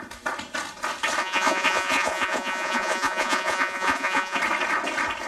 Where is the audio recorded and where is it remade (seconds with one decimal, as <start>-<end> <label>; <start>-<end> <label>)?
0.0-1.2 recorded; 1.2-4.4 remade; 4.4-5.3 recorded